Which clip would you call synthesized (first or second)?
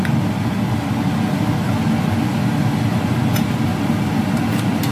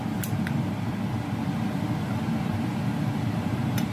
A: second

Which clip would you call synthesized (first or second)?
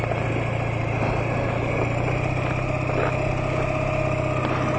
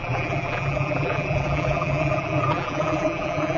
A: second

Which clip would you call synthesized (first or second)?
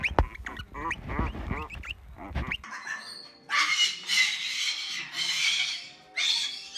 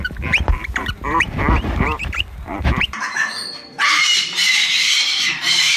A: second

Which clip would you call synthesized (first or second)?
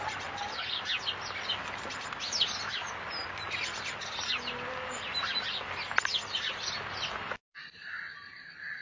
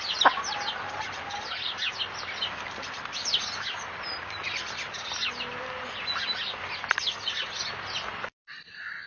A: second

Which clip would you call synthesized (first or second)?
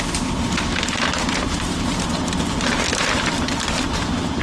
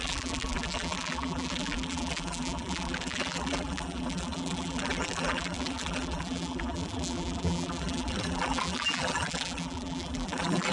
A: second